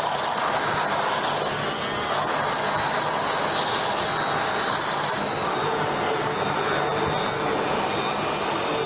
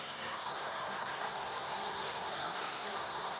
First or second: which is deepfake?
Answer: second